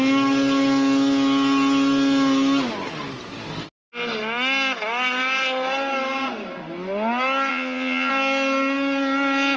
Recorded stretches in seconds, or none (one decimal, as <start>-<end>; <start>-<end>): 0.0-7.5; 8.1-9.6